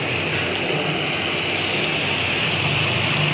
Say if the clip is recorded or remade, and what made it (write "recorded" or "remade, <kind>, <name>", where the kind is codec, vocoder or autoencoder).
recorded